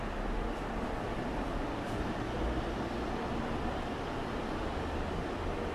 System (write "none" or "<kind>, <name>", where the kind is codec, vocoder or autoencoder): none